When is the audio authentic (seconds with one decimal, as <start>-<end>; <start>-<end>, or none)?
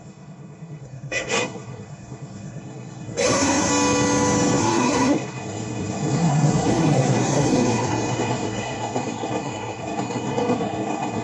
3.7-4.6